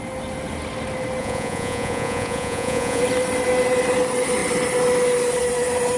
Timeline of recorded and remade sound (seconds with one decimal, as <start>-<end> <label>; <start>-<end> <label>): 0.0-1.2 recorded; 1.2-3.0 remade; 3.0-6.0 recorded